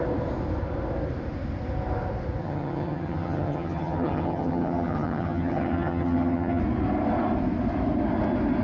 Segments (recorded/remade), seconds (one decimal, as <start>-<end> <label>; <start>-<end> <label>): 0.0-2.4 recorded; 2.4-6.6 remade; 6.6-8.6 recorded